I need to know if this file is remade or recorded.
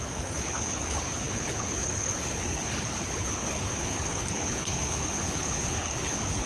remade